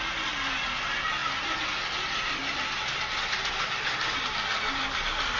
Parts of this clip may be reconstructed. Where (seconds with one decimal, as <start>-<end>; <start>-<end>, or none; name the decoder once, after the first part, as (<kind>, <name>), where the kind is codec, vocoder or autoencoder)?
none